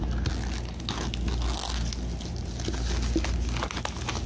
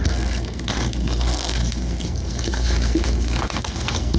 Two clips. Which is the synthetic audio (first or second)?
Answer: second